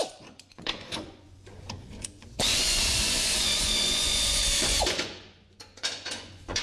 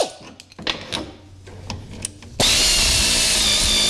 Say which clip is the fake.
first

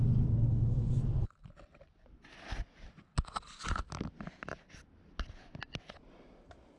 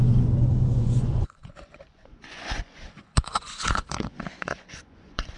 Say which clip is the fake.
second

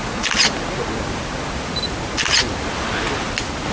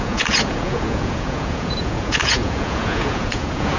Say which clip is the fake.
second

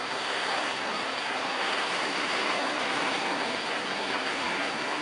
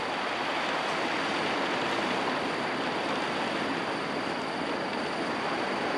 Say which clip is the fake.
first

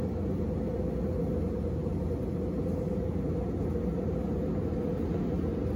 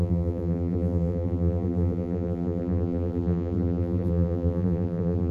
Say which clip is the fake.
second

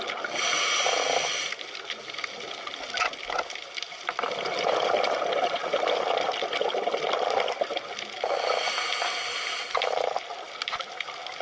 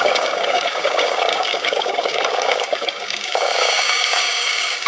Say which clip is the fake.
second